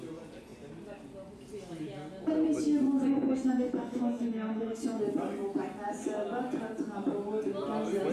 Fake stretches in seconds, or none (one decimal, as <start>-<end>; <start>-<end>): 3.1-5.0